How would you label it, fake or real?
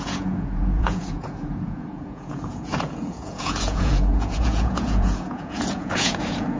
fake